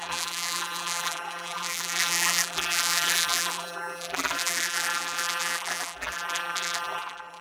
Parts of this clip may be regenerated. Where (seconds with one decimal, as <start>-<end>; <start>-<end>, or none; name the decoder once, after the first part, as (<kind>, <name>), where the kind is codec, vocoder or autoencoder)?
0.0-7.4 (vocoder, BigVGAN v2)